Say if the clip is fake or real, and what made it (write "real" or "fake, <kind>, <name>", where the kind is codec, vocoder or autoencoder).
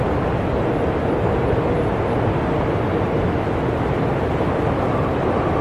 real